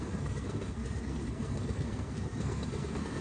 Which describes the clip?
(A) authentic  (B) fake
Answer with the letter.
B